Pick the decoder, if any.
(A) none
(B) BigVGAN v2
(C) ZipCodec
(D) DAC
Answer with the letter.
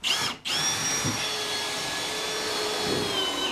A